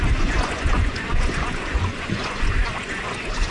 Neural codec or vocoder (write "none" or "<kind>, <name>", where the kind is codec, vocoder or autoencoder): vocoder, Vocos